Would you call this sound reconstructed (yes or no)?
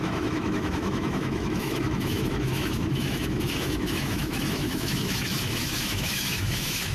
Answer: yes